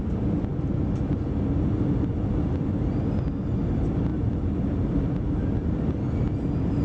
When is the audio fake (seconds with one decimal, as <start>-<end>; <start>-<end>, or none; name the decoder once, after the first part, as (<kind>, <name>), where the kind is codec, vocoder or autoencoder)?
none